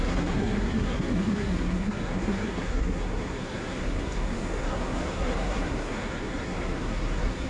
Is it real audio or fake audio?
fake